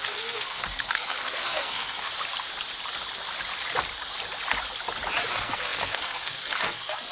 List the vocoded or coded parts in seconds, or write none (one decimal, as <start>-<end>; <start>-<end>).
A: 0.0-2.1; 5.3-7.1